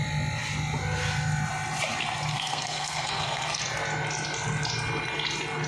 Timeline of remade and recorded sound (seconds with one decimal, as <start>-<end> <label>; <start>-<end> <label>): 0.0-2.3 recorded; 2.3-3.6 remade; 3.6-5.7 recorded